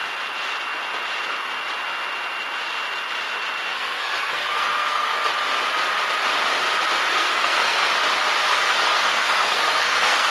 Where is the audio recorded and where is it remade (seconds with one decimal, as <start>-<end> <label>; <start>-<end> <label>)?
0.0-3.7 recorded; 3.7-5.3 remade; 5.3-7.0 recorded; 7.0-7.9 remade; 7.9-8.5 recorded; 8.5-10.3 remade